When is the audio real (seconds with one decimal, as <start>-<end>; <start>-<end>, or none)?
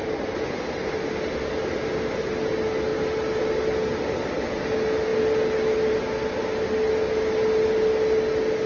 0.0-8.7